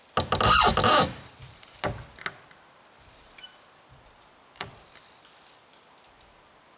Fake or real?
real